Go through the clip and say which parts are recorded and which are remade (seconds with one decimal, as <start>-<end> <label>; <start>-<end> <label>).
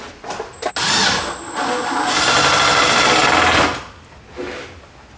0.0-5.2 recorded